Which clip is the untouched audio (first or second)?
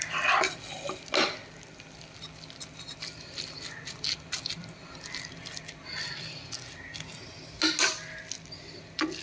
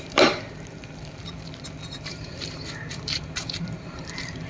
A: first